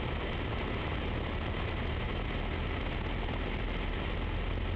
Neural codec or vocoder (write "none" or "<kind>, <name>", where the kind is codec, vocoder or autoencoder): none